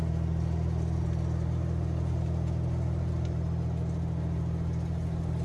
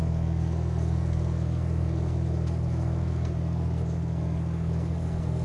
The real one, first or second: first